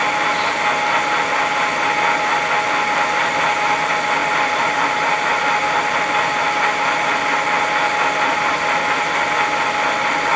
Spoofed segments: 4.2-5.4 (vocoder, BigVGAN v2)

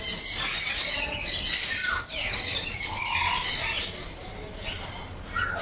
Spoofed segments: 1.8-5.6 (vocoder, BigVGAN v2)

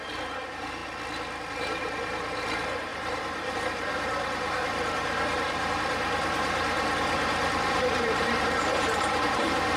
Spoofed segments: 0.0-0.8 (vocoder, BigVGAN v2); 1.5-9.8

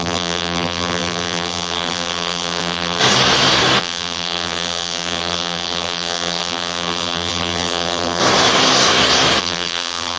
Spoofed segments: 0.0-3.0 (vocoder, BigVGAN v2); 3.8-8.2; 9.4-10.2

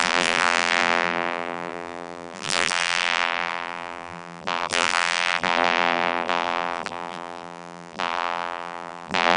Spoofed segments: 0.0-9.4 (vocoder, BigVGAN v2)

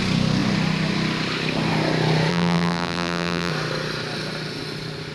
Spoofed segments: 2.3-3.5 (vocoder, BigVGAN v2)

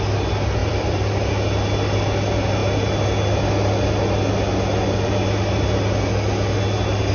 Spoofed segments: 0.6-1.3 (vocoder, BigVGAN v2)

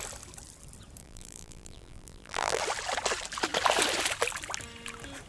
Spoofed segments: 1.0-2.6 (vocoder, BigVGAN v2)